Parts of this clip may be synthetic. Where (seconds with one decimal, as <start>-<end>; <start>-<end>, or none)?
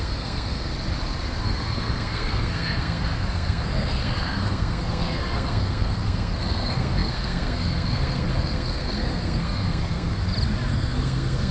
0.0-0.7; 1.4-10.2; 10.7-11.5